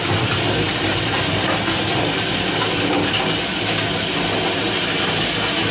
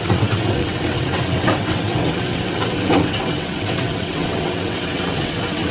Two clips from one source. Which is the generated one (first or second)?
second